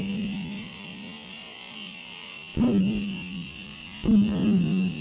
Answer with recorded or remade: remade